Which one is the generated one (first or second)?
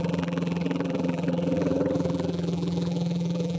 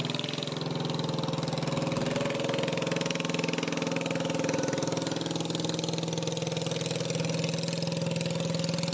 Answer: first